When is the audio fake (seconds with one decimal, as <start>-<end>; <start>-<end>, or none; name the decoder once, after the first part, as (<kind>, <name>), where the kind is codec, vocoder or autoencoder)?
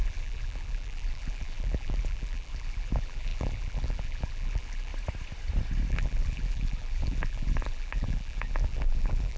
0.0-4.9 (vocoder, BigVGAN v2); 5.9-9.4